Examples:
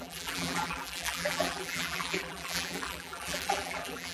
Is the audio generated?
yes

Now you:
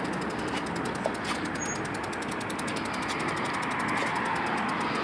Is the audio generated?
no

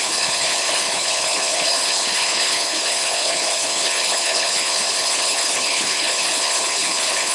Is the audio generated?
yes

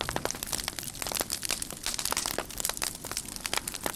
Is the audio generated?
no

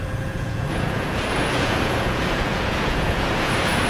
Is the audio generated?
yes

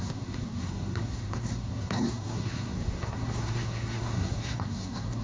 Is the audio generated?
yes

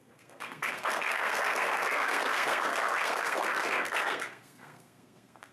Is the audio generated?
yes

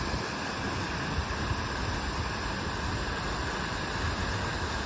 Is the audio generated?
no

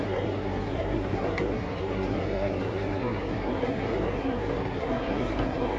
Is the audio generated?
yes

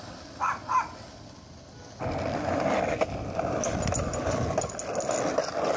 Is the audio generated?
no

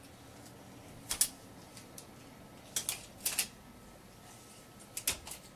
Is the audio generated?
no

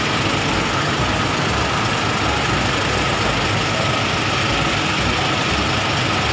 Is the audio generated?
no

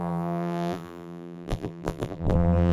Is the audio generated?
yes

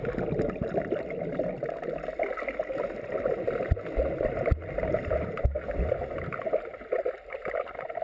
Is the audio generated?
no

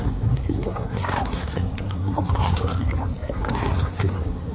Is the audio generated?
yes